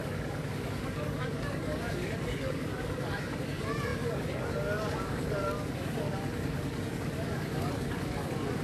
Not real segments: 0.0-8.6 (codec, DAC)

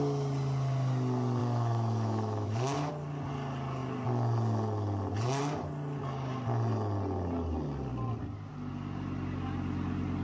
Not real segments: 1.4-2.9 (autoencoder, DAC-VAE)

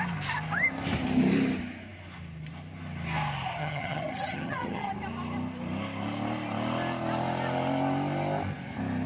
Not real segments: 3.6-4.9 (vocoder, HiFi-GAN)

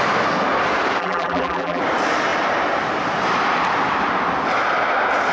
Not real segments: 1.0-1.8 (vocoder, BigVGAN v2)

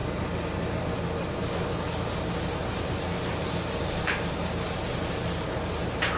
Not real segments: 2.4-6.2 (vocoder, BigVGAN v2)

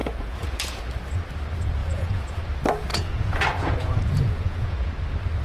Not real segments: 0.0-0.8 (vocoder, Vocos); 1.8-2.4; 2.9-4.9

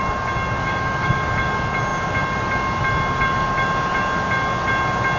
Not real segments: 0.6-1.3 (autoencoder, DAC-VAE)